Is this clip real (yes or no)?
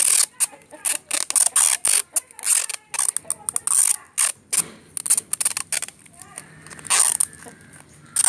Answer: yes